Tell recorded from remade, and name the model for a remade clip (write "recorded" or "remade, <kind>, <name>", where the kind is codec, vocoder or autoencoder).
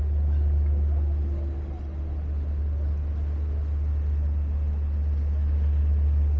recorded